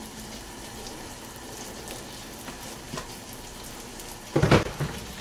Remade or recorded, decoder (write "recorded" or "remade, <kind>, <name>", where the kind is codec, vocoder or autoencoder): recorded